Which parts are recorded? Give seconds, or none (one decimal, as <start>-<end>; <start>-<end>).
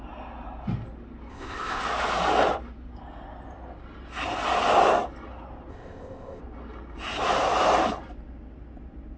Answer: 0.0-1.3; 1.8-5.7; 6.4-9.2